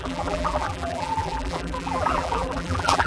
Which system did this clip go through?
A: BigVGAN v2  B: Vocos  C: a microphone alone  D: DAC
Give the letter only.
A